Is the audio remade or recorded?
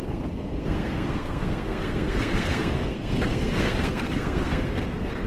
remade